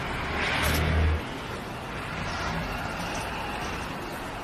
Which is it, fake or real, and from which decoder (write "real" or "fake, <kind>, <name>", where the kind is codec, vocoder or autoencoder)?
real